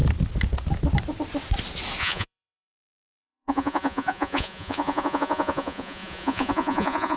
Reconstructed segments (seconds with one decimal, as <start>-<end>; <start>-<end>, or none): 2.0-7.2